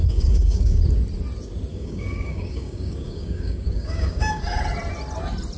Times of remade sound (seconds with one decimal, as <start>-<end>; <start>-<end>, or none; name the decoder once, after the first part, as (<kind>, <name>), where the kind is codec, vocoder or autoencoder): 0.0-0.8 (codec, DAC); 1.7-4.4